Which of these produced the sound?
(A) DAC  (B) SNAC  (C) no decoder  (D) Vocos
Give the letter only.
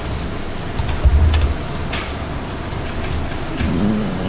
C